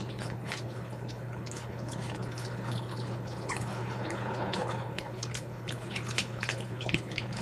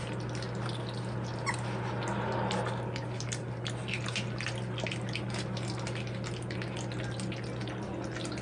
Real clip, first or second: second